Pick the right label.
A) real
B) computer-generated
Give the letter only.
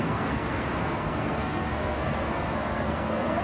B